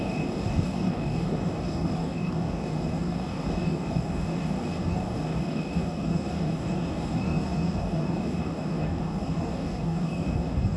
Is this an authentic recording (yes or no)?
no